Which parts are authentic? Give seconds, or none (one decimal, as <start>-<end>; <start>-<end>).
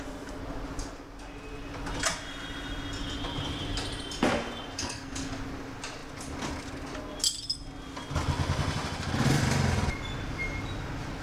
0.0-4.8; 5.3-11.2